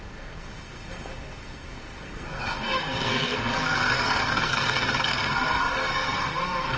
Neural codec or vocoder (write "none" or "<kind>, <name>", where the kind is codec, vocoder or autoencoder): codec, SNAC